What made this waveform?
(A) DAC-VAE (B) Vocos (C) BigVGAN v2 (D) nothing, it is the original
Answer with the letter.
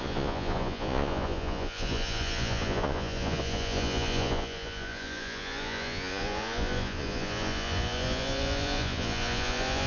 B